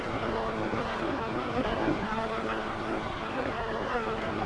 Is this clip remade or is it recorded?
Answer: remade